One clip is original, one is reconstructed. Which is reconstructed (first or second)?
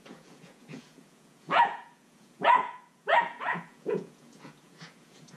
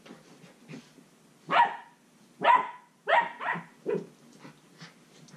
first